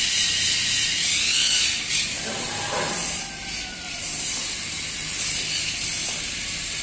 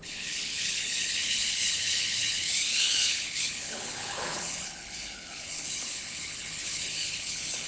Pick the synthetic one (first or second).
second